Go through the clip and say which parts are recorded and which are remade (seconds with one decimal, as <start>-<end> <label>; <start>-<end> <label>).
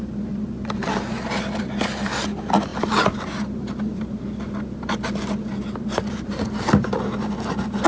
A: 0.0-7.9 recorded